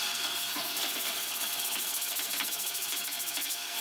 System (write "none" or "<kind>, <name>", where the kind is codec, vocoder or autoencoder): codec, SNAC